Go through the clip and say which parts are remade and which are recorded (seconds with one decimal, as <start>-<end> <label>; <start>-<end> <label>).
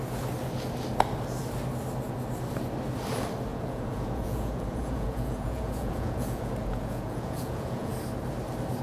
0.0-3.5 recorded; 3.5-7.9 remade; 7.9-8.8 recorded